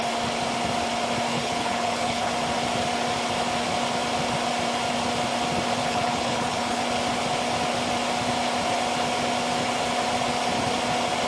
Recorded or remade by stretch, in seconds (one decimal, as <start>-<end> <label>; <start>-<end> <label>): 0.0-1.3 recorded; 1.3-2.3 remade; 2.3-5.8 recorded; 5.8-6.8 remade; 6.8-11.3 recorded